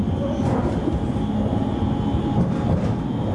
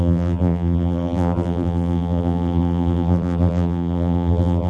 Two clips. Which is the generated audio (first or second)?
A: second